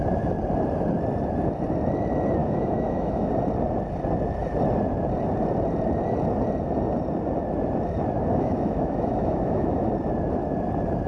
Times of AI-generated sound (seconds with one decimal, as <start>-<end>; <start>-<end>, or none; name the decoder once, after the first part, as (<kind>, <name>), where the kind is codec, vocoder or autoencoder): 2.4-3.3 (autoencoder, DAC-VAE); 8.3-9.9